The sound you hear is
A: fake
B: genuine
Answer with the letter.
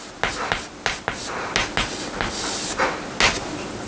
B